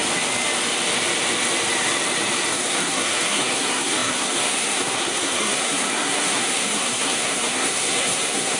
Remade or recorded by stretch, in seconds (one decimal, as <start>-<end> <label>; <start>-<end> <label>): 0.0-2.5 recorded; 2.5-8.6 remade